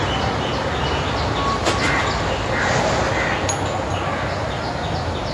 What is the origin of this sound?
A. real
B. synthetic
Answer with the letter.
A